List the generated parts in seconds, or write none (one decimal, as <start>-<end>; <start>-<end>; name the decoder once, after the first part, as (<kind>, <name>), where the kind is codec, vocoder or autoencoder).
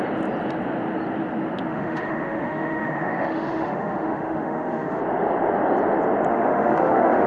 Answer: 1.7-5.0 (autoencoder, DAC-VAE); 6.3-7.3